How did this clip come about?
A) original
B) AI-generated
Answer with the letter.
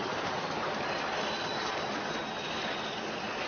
A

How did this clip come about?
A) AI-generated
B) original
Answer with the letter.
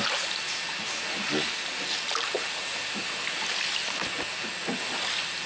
B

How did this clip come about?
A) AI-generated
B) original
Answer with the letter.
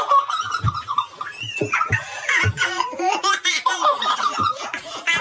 B